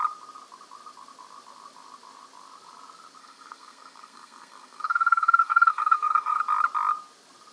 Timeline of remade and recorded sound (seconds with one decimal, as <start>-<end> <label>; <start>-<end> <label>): 0.0-3.2 recorded; 3.2-6.4 remade; 6.4-7.5 recorded